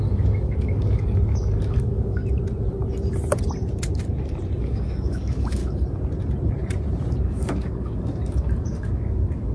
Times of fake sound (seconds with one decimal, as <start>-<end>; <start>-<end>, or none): 0.0-2.2; 4.6-5.6; 7.2-9.5